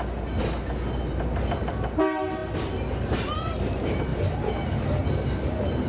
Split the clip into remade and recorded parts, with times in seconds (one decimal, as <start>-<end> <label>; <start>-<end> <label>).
0.0-5.9 recorded